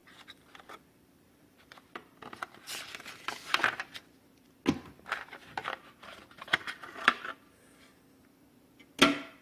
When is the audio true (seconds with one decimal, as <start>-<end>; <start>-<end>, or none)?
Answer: 4.0-5.6; 7.4-9.4